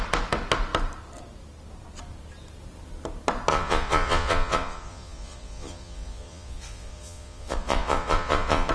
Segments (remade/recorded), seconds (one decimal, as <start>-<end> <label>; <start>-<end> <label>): 0.0-3.5 recorded; 3.5-8.7 remade